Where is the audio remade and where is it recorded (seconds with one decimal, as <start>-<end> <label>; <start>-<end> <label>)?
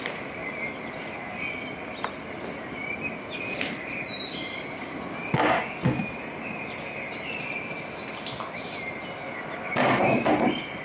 0.0-10.8 recorded